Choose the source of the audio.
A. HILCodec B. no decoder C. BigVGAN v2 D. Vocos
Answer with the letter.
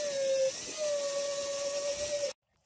B